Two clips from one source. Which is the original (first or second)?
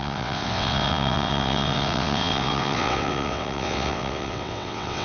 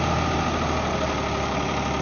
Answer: second